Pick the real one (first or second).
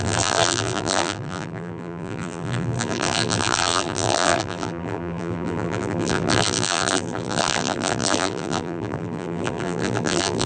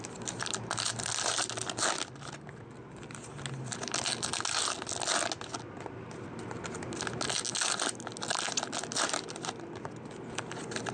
second